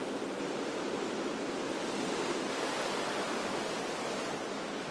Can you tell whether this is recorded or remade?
recorded